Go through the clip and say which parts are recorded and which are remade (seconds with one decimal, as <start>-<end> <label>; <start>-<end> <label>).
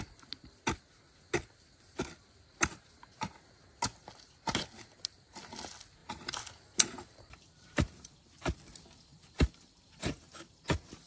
0.0-6.0 recorded; 6.0-8.1 remade; 8.1-11.1 recorded